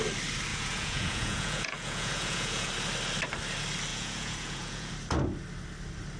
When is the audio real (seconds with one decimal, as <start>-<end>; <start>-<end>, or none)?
0.0-0.5; 2.7-3.9; 4.9-6.2

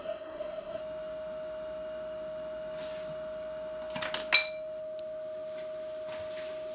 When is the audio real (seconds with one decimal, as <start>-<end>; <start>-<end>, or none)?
0.8-6.7

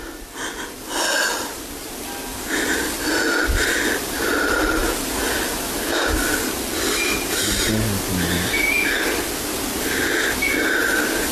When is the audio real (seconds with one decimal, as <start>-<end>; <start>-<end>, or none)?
0.0-11.3

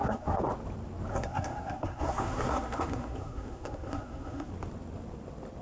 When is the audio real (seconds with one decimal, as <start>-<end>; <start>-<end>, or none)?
0.5-1.1; 4.5-5.6

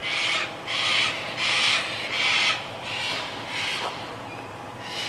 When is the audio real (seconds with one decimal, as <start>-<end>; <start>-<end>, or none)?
0.0-1.0; 4.1-5.1

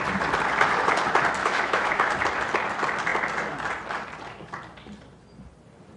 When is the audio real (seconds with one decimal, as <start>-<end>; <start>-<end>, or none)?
0.0-1.4; 2.1-6.0